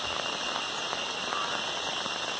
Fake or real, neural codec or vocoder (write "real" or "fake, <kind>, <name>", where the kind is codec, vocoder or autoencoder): real